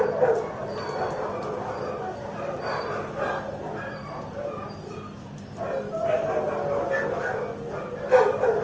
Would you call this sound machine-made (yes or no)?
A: no